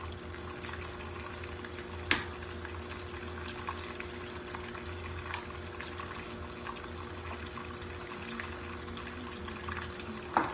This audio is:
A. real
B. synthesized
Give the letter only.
A